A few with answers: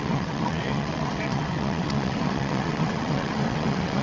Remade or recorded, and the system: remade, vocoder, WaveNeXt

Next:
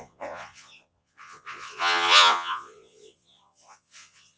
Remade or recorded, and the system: remade, vocoder, Vocos